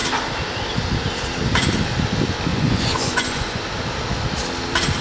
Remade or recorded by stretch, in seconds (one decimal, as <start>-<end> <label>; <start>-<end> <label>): 0.0-2.5 recorded; 2.5-3.6 remade; 3.6-5.0 recorded